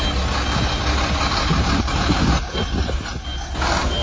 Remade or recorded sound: recorded